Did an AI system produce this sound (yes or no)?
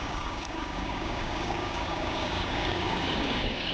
yes